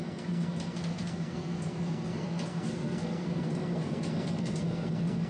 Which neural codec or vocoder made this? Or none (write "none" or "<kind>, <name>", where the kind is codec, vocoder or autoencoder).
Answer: codec, SNAC